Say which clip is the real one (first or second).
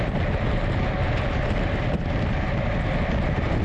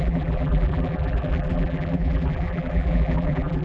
first